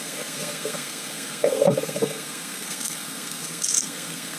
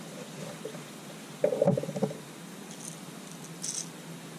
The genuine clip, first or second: second